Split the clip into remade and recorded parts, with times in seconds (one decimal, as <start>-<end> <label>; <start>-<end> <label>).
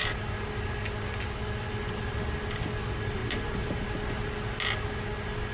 0.0-5.5 recorded